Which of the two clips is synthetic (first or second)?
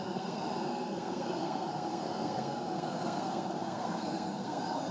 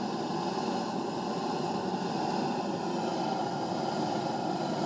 first